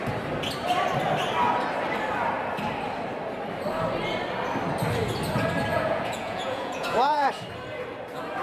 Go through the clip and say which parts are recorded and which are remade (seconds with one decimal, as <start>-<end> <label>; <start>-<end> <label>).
0.0-5.7 recorded; 5.7-7.3 remade; 7.3-8.4 recorded